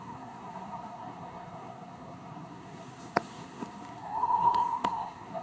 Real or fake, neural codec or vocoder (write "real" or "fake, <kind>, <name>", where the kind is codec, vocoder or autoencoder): fake, codec, SNAC